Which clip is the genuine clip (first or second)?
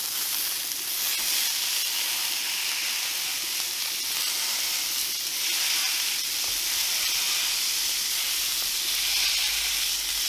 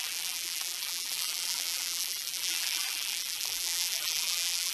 first